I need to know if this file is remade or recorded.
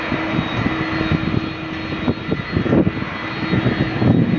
recorded